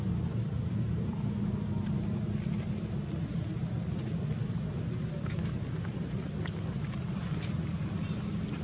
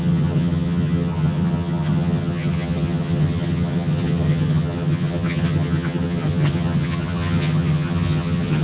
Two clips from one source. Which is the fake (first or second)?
second